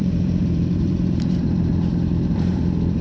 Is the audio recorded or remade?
remade